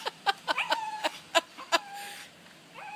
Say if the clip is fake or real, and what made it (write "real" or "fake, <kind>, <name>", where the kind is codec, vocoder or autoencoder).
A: real